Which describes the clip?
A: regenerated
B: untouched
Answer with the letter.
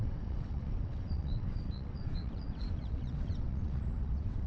A